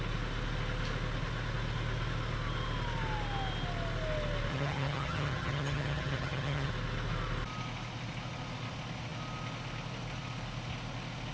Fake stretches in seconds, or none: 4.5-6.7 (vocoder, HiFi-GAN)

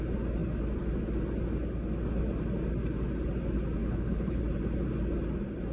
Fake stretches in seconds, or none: 3.8-4.4 (codec, HILCodec)

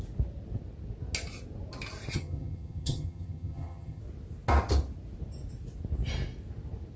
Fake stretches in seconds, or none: 2.1-4.0 (vocoder, HiFi-GAN)

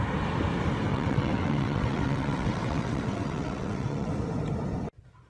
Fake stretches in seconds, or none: 0.9-4.1 (vocoder, WaveNeXt)

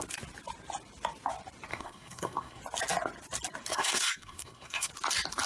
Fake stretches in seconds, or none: 1.7-2.6 (codec, SNAC); 3.7-4.9

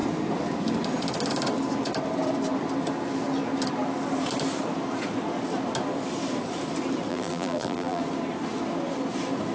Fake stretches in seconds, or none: 7.1-8.0 (vocoder, BigVGAN v2)

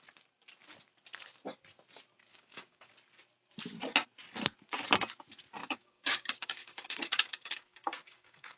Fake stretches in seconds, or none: 2.3-2.9 (codec, DAC); 5.6-8.6

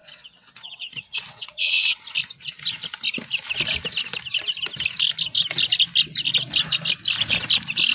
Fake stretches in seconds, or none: 0.0-2.0 (vocoder, WaveNeXt)